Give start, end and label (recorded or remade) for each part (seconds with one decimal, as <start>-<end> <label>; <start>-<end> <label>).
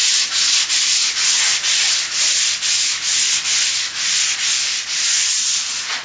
0.0-6.0 recorded